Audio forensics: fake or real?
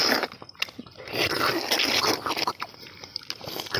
real